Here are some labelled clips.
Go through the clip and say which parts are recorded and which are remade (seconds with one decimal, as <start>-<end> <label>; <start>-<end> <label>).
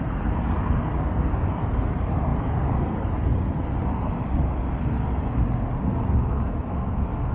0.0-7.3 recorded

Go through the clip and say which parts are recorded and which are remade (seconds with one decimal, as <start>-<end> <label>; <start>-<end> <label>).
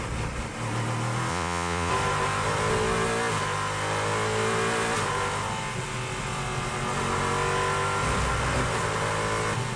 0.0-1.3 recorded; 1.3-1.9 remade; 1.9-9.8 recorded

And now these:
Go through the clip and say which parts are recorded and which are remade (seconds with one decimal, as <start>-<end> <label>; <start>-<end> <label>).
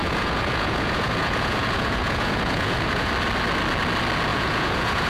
0.0-3.1 remade; 3.1-4.3 recorded; 4.3-5.1 remade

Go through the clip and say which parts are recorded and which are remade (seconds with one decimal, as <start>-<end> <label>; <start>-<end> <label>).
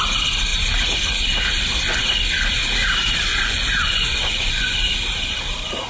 0.0-3.3 recorded; 3.3-4.8 remade; 4.8-5.9 recorded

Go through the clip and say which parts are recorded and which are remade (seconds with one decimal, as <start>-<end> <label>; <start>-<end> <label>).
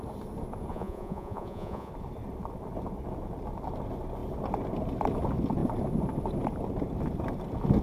0.0-0.7 recorded; 0.7-1.9 remade; 1.9-7.8 recorded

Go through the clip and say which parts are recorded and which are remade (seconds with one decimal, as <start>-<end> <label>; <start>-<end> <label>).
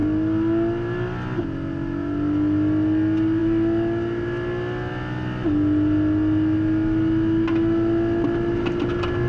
0.0-9.3 recorded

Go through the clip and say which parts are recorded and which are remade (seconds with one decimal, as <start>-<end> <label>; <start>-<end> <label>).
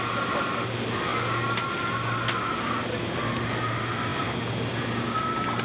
0.0-5.6 recorded